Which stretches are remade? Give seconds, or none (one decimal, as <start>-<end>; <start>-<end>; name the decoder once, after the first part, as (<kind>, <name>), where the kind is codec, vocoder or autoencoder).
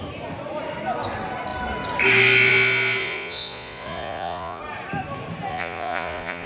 3.0-4.6 (vocoder, Vocos); 5.5-6.5